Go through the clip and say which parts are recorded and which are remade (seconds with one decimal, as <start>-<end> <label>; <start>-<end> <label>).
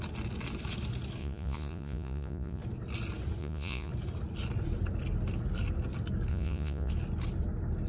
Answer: 0.0-1.2 recorded; 1.2-2.6 remade; 2.6-3.4 recorded; 3.4-3.9 remade; 3.9-6.3 recorded; 6.3-6.9 remade; 6.9-7.9 recorded